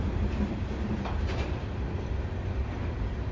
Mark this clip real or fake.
real